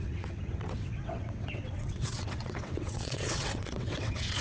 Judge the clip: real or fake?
fake